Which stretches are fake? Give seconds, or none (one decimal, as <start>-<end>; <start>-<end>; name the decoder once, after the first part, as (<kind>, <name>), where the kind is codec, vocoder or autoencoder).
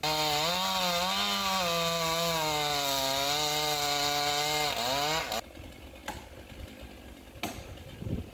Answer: none